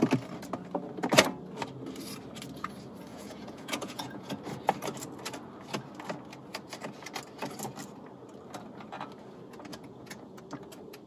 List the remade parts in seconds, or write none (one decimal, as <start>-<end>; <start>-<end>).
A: 3.1-4.3; 9.7-10.4

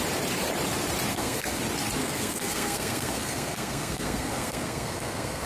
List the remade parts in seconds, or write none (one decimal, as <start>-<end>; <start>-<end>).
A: 1.1-1.6; 2.0-5.5